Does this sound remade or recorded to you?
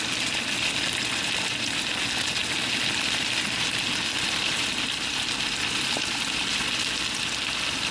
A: recorded